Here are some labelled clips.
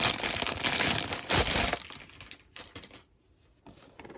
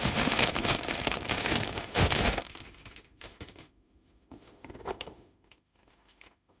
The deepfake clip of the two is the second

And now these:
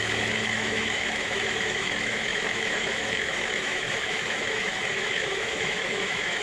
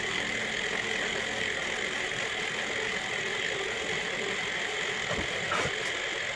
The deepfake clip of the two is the first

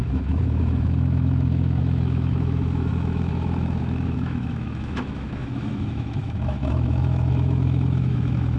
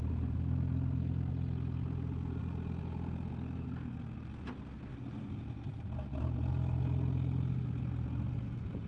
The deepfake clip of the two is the first